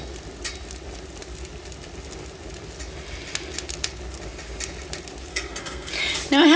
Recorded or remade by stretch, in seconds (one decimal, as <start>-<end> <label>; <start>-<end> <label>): 0.0-5.3 recorded; 5.3-5.9 remade; 5.9-6.6 recorded